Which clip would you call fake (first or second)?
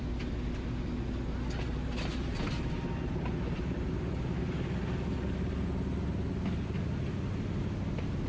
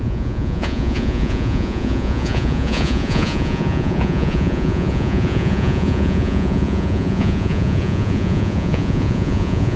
second